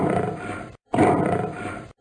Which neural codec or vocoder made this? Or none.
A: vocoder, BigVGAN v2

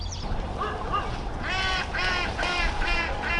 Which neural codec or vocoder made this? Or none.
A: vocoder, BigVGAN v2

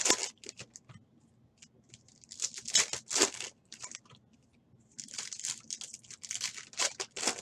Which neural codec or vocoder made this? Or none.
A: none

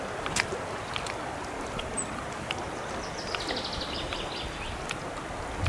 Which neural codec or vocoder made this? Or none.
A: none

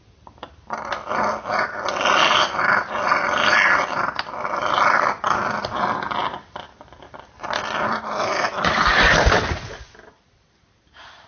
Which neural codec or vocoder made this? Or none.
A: vocoder, BigVGAN v2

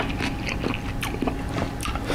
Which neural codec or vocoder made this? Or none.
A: none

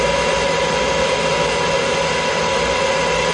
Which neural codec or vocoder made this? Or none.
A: none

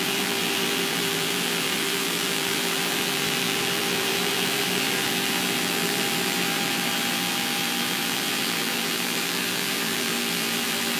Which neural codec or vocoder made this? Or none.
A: vocoder, BigVGAN v2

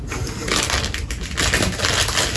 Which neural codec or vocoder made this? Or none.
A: none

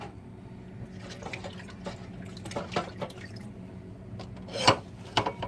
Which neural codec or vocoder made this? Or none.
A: none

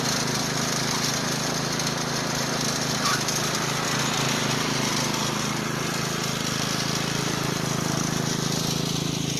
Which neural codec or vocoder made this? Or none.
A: none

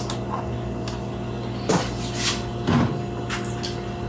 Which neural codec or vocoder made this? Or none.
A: none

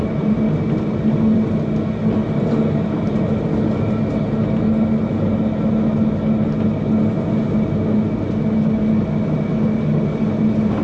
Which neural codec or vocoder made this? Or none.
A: none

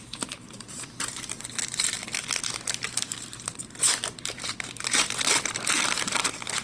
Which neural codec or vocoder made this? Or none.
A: vocoder, BigVGAN v2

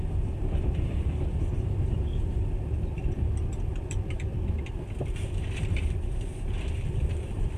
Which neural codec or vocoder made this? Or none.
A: vocoder, BigVGAN v2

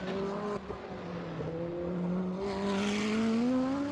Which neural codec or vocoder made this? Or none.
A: none